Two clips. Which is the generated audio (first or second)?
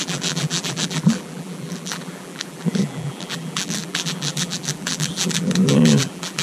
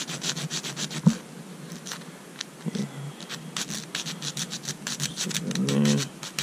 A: first